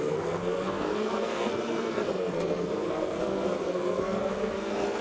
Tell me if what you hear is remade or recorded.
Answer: remade